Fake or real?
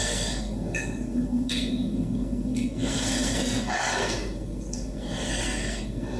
fake